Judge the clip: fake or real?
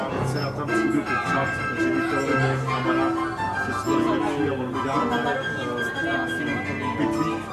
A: real